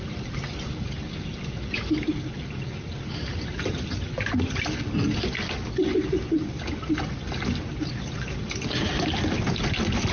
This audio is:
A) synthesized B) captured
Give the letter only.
B